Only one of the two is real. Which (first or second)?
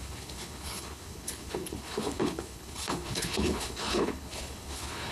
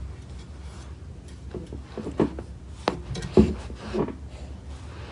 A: second